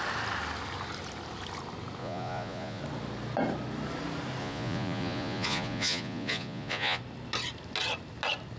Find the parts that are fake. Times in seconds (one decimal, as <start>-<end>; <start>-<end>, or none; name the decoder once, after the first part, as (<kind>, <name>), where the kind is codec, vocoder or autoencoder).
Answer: 2.0-2.8 (vocoder, Vocos); 4.4-7.0